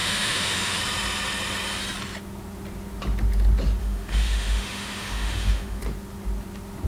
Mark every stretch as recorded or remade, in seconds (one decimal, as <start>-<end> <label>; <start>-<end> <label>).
0.0-0.8 remade; 0.8-3.8 recorded; 3.8-5.8 remade; 5.8-6.9 recorded